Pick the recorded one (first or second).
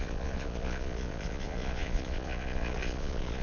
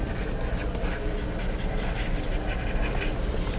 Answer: second